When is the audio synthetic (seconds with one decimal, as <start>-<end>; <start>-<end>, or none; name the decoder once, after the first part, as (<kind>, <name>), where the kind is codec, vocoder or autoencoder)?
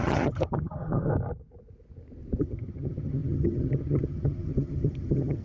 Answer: 0.0-1.1 (vocoder, HiFi-GAN); 2.4-5.4